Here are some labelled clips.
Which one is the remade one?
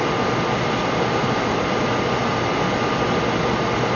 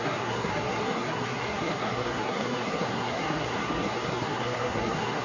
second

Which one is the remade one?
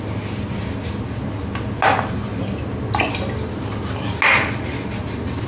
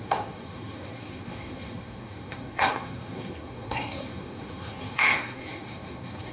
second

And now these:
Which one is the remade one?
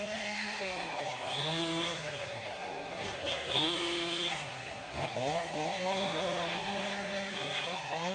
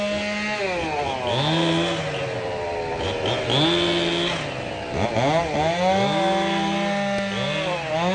first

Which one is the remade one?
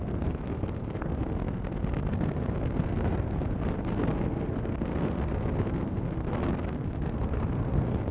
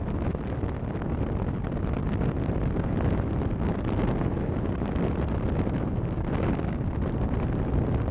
first